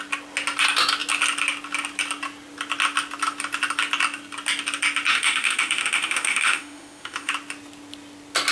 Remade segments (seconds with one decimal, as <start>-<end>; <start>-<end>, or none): 5.1-7.3